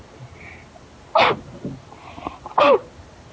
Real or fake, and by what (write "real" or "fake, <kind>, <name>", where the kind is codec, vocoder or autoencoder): real